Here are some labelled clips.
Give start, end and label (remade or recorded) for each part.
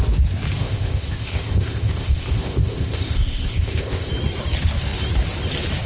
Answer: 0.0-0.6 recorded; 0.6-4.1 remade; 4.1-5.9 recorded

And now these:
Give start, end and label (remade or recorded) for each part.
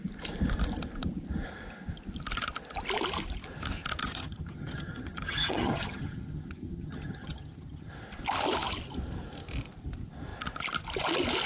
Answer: 0.0-4.0 recorded; 4.0-7.9 remade; 7.9-11.5 recorded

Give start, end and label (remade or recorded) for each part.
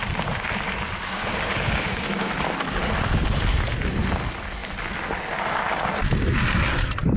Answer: 0.0-1.1 recorded; 1.1-2.3 remade; 2.3-7.2 recorded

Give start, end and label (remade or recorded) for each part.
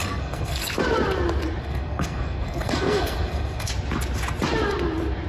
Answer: 0.0-0.7 remade; 0.7-1.6 recorded; 1.6-3.7 remade; 3.7-5.3 recorded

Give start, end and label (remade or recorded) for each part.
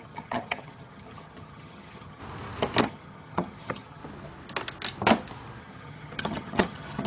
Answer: 0.0-2.2 remade; 2.2-2.8 recorded; 2.8-4.0 remade; 4.0-5.6 recorded; 5.6-7.1 remade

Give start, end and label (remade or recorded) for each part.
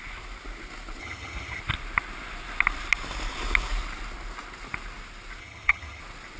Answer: 0.0-1.0 recorded; 1.0-1.6 remade; 1.6-5.4 recorded; 5.4-6.0 remade; 6.0-6.4 recorded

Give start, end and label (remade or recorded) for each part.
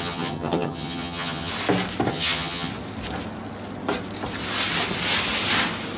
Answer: 0.0-1.5 remade; 1.5-2.1 recorded; 2.1-2.7 remade; 2.7-6.0 recorded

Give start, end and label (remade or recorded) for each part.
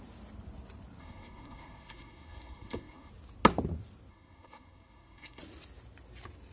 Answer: 0.0-1.0 recorded; 1.0-3.1 remade; 3.1-4.1 recorded; 4.1-5.4 remade; 5.4-6.5 recorded